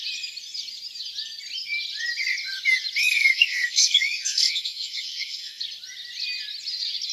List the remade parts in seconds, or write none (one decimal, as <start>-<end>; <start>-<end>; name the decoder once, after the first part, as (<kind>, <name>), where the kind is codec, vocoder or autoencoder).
3.0-5.6 (codec, SNAC)